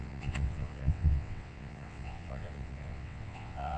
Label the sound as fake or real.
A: fake